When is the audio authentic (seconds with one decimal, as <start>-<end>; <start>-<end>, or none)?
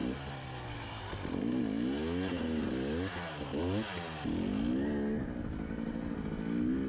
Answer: 0.0-6.9